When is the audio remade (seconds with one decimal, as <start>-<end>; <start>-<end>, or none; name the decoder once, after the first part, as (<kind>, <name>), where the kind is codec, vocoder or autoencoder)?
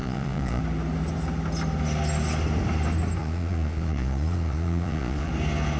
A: 0.0-0.6 (vocoder, Vocos); 3.2-5.3